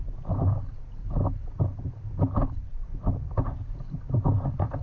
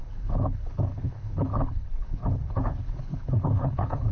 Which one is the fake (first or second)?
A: second